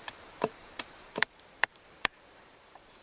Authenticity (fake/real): fake